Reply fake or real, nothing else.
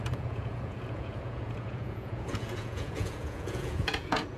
fake